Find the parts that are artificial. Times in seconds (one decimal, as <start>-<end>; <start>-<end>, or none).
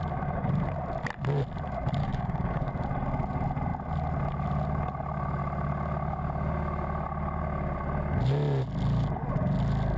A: 2.0-2.7